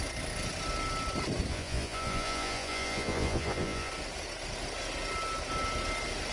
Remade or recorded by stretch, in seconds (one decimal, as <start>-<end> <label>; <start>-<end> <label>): 0.0-1.5 recorded; 1.5-3.9 remade; 3.9-6.3 recorded